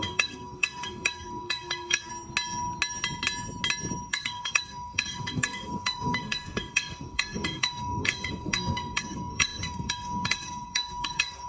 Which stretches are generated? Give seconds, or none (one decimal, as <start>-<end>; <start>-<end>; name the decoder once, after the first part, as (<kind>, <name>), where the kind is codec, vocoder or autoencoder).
0.0-2.1 (codec, SNAC); 4.1-11.5